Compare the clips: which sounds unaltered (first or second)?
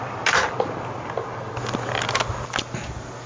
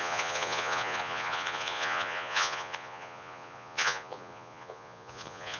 first